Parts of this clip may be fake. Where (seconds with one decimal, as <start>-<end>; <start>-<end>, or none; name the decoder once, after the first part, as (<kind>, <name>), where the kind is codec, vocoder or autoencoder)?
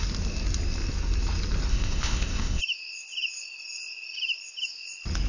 1.7-2.6 (codec, ZipCodec)